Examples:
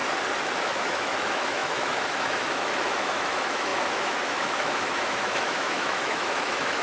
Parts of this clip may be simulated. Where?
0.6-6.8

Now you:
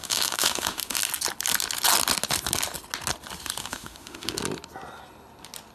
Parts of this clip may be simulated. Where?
0.0-1.0; 3.6-4.4